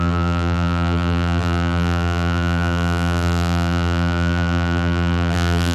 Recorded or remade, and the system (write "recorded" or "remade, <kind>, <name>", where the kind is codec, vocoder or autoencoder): remade, vocoder, BigVGAN v2